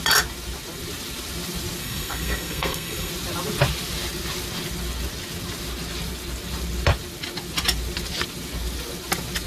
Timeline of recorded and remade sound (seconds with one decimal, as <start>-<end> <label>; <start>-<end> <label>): 0.0-1.8 recorded; 1.8-3.1 remade; 3.1-9.5 recorded